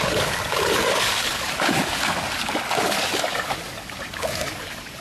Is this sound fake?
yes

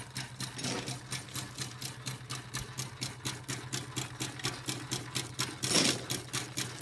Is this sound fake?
no